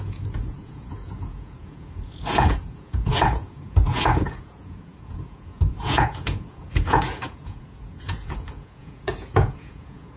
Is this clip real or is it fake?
fake